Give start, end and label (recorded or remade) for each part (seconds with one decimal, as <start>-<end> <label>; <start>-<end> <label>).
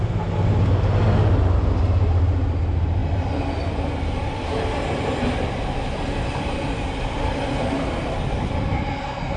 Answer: 0.0-9.4 recorded